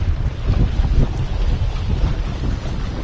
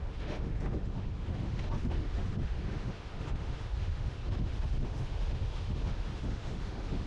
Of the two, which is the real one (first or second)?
first